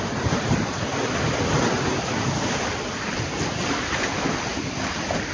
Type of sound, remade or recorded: recorded